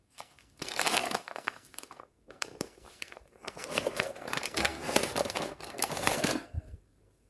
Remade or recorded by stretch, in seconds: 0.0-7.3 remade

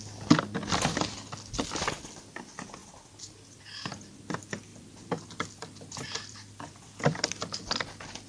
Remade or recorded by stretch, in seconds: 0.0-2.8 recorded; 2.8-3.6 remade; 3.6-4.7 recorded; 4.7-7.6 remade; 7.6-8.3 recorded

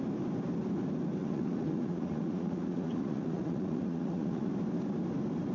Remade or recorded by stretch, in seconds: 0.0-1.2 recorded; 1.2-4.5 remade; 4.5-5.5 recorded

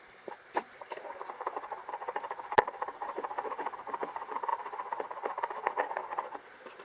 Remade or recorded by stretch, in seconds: 0.0-1.8 recorded; 1.8-3.9 remade; 3.9-6.8 recorded